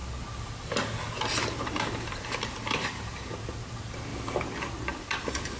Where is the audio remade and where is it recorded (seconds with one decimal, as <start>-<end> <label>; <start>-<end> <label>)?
0.0-5.6 recorded